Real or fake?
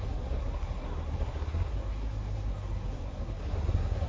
fake